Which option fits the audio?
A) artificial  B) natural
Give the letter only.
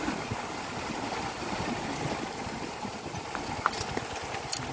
B